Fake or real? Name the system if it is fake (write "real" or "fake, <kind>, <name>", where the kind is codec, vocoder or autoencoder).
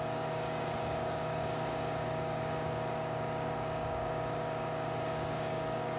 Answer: fake, codec, DAC